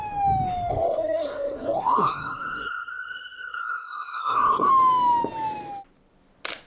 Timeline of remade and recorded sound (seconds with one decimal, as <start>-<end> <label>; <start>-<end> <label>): 0.0-0.7 recorded; 0.7-4.7 remade; 4.7-6.7 recorded